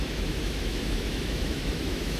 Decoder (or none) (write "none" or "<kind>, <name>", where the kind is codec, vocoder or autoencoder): autoencoder, DAC-VAE